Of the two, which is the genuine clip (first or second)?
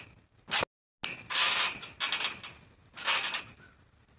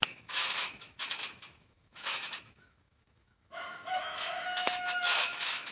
first